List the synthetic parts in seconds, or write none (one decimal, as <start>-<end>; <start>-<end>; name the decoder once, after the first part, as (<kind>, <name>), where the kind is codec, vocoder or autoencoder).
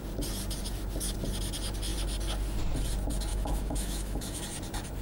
3.3-4.4 (autoencoder, DAC-VAE)